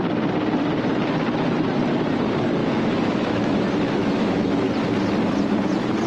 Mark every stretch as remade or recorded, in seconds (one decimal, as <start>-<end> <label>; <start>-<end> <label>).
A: 0.0-2.6 recorded; 2.6-3.6 remade; 3.6-4.0 recorded; 4.0-4.7 remade; 4.7-6.1 recorded